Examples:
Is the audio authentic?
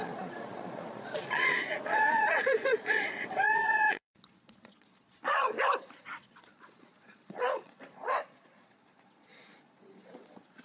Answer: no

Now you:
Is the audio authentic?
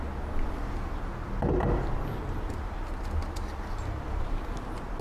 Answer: yes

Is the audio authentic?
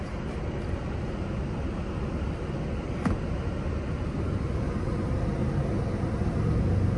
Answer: yes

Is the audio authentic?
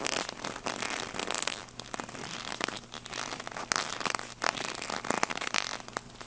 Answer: yes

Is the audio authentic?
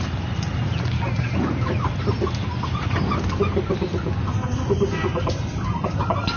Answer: yes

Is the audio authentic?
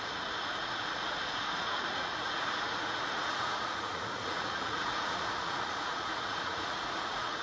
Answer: no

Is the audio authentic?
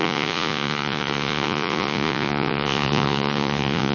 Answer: no